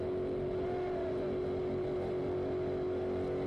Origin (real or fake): real